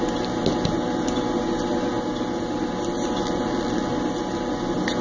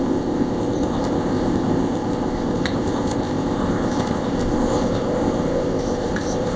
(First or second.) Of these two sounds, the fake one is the second